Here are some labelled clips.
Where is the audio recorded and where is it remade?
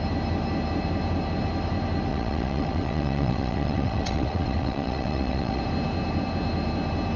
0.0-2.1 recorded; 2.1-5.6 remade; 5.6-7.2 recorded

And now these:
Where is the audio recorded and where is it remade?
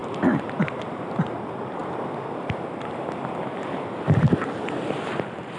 0.0-5.6 recorded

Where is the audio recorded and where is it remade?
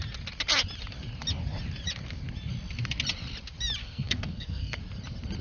0.0-3.8 recorded; 3.8-4.8 remade; 4.8-5.4 recorded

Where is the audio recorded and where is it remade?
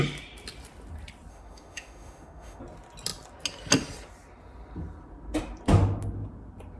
0.0-1.3 recorded; 1.3-2.6 remade; 2.6-6.8 recorded